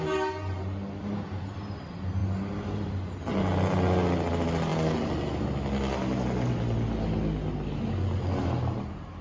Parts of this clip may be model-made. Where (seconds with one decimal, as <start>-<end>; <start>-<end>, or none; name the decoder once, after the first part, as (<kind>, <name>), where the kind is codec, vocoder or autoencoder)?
none